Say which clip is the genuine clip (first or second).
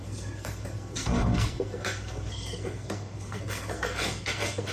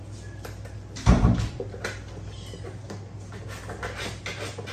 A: second